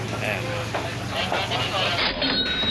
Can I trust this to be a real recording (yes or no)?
yes